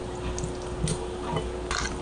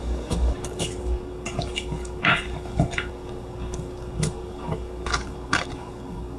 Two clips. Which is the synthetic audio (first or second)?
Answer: second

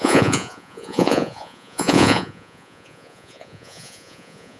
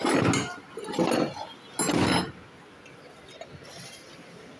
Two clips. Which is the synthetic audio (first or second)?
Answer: first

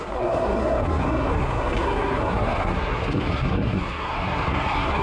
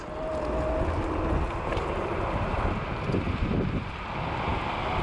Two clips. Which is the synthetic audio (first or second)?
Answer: first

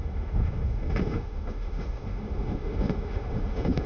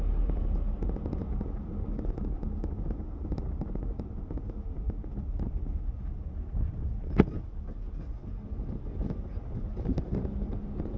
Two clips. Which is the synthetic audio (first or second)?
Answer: first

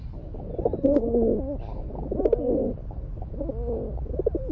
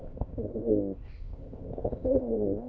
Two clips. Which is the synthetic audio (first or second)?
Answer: second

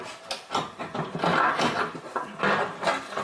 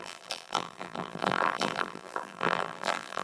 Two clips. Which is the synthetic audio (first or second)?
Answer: second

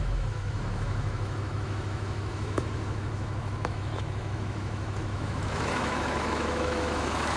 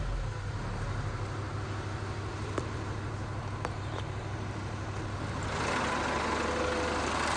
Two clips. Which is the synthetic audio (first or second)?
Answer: first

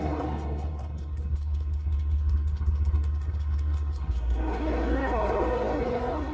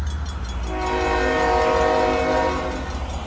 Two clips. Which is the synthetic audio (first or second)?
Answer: first